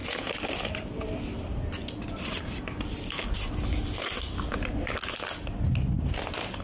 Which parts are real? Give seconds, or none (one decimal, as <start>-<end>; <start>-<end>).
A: 0.0-6.6